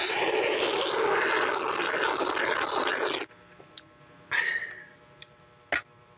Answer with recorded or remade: recorded